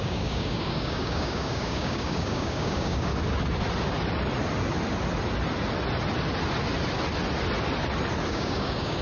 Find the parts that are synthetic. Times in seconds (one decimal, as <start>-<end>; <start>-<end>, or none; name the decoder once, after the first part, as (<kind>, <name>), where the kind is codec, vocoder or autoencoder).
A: 0.0-3.1 (codec, DAC); 8.3-9.0